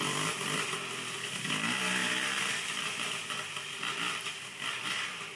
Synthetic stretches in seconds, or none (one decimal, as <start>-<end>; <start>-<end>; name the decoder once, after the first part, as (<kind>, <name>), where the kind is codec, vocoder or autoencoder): none